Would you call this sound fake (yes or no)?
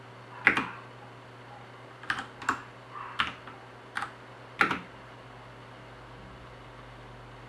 no